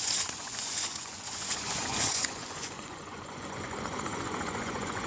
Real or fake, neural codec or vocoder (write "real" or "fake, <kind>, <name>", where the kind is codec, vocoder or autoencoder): fake, vocoder, Vocos